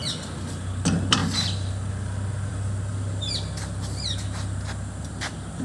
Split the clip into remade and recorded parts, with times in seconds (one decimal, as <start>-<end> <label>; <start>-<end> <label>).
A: 0.0-1.2 remade; 1.2-1.9 recorded; 1.9-5.6 remade